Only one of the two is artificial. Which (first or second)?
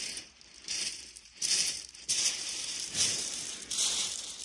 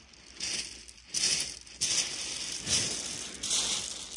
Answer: first